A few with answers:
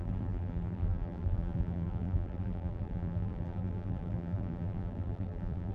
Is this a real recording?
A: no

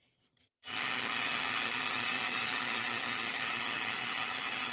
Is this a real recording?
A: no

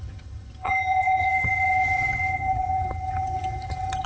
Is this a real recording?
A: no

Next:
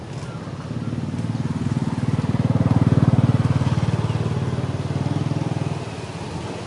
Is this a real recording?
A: yes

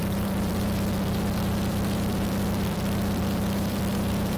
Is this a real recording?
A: no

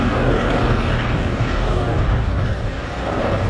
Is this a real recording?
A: no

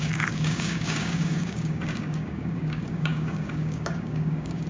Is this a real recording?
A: no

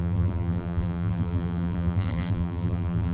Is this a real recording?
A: no